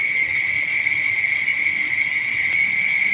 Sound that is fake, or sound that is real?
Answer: real